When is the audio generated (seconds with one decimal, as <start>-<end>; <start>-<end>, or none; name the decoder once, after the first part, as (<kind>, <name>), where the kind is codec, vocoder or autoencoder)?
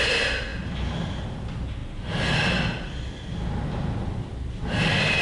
none